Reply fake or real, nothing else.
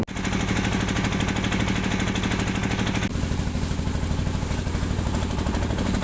real